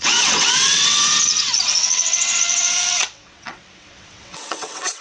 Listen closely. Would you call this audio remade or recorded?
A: remade